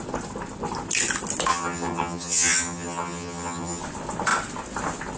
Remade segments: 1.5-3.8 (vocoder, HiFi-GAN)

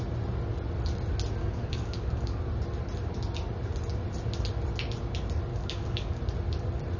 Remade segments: 1.4-2.4 (codec, DAC); 5.5-6.2

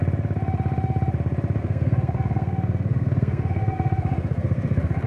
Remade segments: 1.6-5.1 (codec, SNAC)

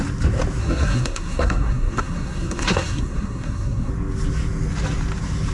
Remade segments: 0.6-3.9 (codec, SNAC)

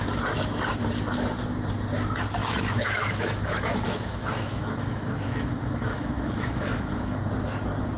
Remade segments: 2.4-7.2 (autoencoder, DAC-VAE)

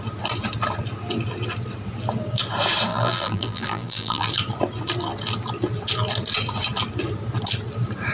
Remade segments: 2.9-4.3 (vocoder, BigVGAN v2)

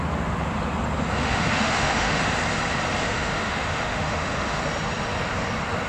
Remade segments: 1.2-2.2 (autoencoder, DAC-VAE); 3.0-4.6